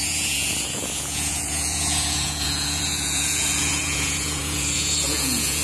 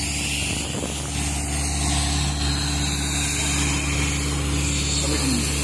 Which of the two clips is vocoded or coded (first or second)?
first